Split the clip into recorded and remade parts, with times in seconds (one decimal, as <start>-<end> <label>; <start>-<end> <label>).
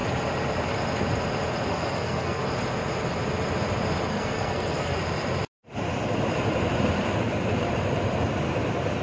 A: 0.0-1.7 recorded; 1.7-2.4 remade; 2.4-4.1 recorded; 4.1-5.0 remade; 5.0-9.0 recorded